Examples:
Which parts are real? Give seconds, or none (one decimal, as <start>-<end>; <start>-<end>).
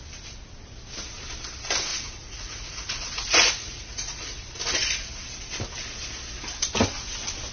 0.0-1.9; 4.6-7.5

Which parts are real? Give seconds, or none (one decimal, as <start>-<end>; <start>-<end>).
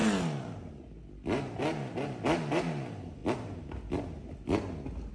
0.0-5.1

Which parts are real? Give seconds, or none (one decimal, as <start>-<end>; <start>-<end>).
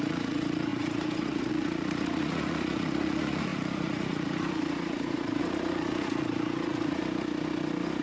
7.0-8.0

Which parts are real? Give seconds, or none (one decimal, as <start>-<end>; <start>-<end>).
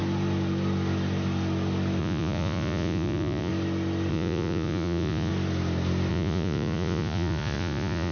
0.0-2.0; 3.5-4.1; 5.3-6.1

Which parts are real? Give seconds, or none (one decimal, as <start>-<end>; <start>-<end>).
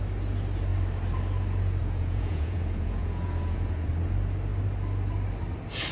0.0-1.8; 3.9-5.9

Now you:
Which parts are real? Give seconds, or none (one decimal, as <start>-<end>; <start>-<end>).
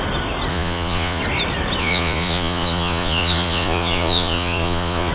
0.0-0.5; 1.2-1.8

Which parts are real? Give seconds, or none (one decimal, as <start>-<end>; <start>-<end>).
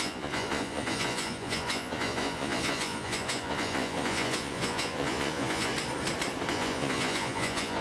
5.7-6.5